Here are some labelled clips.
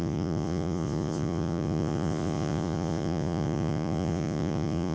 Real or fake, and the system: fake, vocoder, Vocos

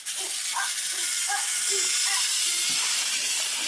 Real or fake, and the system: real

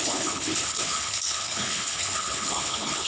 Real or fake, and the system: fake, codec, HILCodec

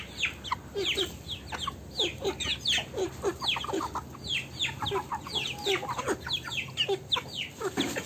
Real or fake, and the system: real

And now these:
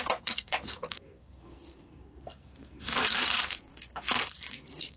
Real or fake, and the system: fake, codec, SNAC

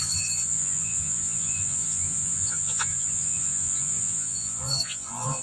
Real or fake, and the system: fake, vocoder, Vocos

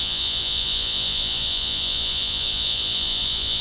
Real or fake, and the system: fake, vocoder, Vocos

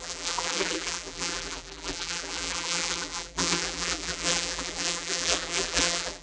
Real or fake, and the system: fake, vocoder, BigVGAN v2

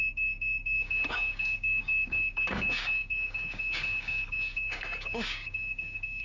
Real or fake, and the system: fake, codec, DAC